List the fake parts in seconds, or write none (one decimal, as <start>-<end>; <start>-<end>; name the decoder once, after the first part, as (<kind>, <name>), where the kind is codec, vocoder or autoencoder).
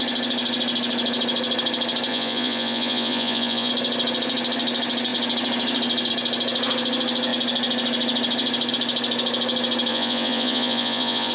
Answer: 2.1-3.7 (vocoder, Vocos); 9.9-11.3